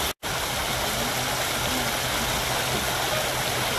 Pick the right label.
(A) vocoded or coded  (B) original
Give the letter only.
B